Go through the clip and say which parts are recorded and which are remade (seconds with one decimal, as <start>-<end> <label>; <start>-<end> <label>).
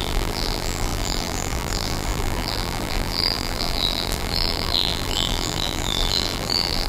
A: 0.0-6.9 remade